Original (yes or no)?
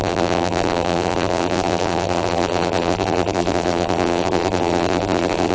no